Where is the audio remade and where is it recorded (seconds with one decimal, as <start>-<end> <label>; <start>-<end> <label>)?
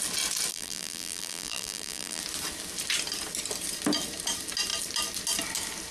0.0-0.5 recorded; 0.5-2.2 remade; 2.2-5.9 recorded